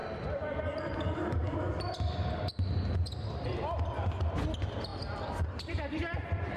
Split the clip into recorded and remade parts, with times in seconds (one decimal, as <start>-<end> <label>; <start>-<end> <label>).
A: 0.0-2.6 remade; 2.6-4.9 recorded; 4.9-6.6 remade